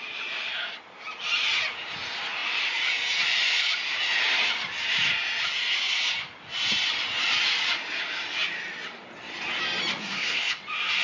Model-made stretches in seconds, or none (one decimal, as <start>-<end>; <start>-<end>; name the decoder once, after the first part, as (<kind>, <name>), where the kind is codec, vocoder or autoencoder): 10.0-10.6 (codec, SNAC)